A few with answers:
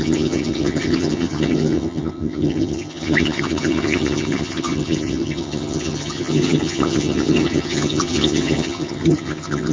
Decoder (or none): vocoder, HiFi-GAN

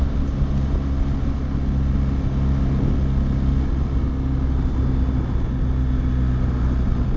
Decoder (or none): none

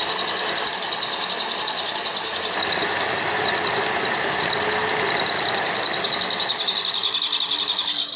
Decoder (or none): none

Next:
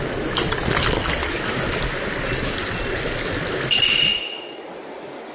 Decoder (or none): none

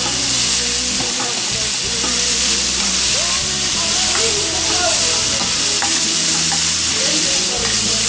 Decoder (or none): none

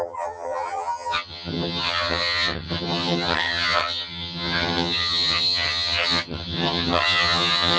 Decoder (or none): vocoder, HiFi-GAN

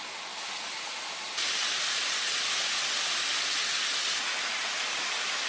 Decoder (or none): none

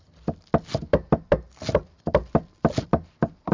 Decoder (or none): none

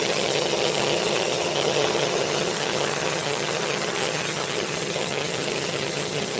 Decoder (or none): vocoder, HiFi-GAN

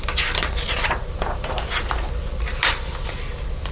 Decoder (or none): none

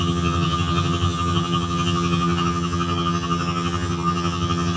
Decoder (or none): vocoder, HiFi-GAN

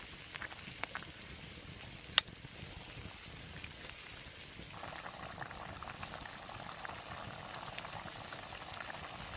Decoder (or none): none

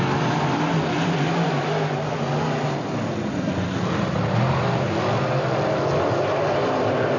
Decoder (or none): none